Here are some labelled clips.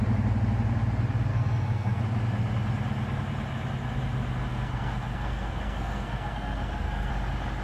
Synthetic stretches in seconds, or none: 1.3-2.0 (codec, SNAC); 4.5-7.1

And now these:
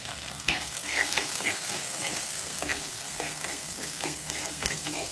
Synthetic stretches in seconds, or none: 0.0-5.1 (codec, SNAC)

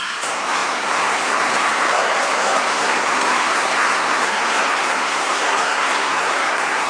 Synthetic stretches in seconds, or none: 0.0-6.9 (codec, SNAC)

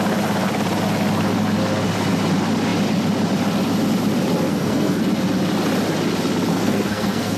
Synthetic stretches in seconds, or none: 4.5-5.0 (codec, SNAC); 6.5-7.4